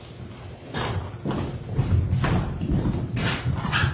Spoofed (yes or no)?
no